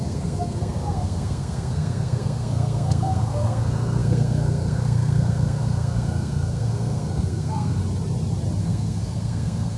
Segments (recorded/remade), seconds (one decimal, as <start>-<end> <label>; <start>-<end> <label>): 0.0-7.8 remade; 7.8-8.6 recorded; 8.6-9.8 remade